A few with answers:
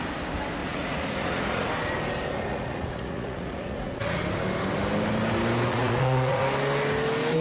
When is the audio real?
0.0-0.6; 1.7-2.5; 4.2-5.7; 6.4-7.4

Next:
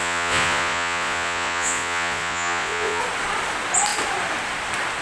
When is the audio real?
3.0-5.0